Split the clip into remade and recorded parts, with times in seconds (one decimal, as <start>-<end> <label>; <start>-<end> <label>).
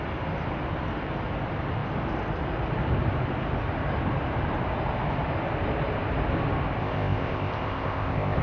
0.0-6.8 recorded; 6.8-8.4 remade